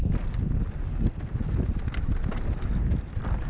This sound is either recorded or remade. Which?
remade